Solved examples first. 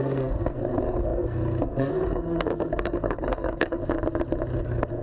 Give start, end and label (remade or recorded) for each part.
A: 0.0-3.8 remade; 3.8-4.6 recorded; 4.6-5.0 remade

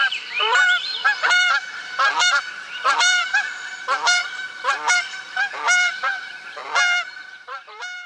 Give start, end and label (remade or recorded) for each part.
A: 0.0-6.6 remade; 6.6-7.2 recorded; 7.2-8.1 remade

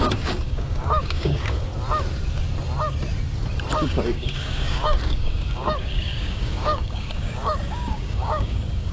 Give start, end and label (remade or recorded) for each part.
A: 0.0-1.7 remade; 1.7-4.2 recorded; 4.2-8.9 remade

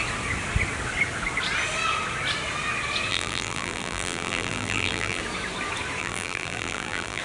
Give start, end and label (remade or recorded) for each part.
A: 0.0-3.1 recorded; 3.1-5.2 remade; 5.2-6.0 recorded; 6.0-7.2 remade

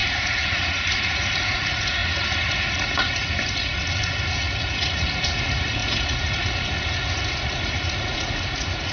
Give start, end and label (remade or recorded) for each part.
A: 0.0-8.9 remade

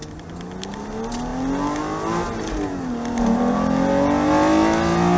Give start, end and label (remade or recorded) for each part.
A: 0.0-5.2 recorded

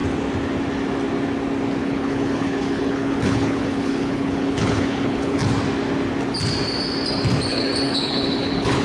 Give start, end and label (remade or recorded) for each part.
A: 0.0-1.8 recorded; 1.8-5.4 remade; 5.4-7.5 recorded; 7.5-8.8 remade

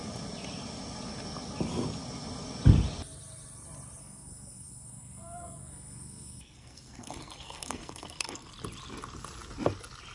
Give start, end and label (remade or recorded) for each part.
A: 0.0-4.0 recorded; 4.0-8.5 remade; 8.5-10.1 recorded